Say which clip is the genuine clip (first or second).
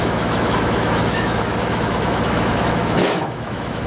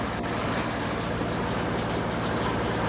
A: second